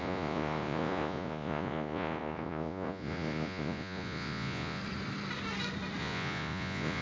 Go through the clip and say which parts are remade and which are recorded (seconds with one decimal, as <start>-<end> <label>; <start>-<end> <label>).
0.0-4.8 remade; 4.8-6.0 recorded; 6.0-7.0 remade